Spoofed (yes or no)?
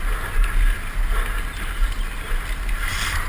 no